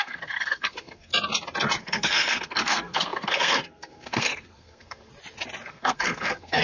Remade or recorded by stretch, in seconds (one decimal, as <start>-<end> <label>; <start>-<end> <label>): 0.0-1.1 remade; 1.1-1.8 recorded; 1.8-5.1 remade; 5.1-5.7 recorded; 5.7-6.6 remade